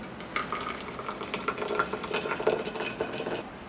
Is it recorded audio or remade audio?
recorded